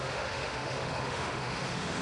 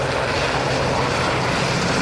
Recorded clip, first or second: second